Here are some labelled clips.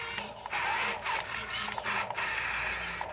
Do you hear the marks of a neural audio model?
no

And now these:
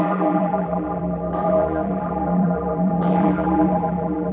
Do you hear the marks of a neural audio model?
yes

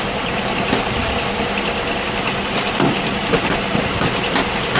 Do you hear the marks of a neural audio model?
no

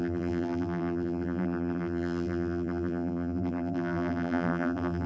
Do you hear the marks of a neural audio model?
yes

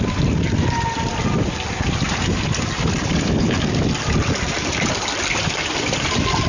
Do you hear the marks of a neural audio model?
yes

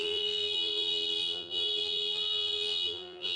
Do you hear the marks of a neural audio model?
yes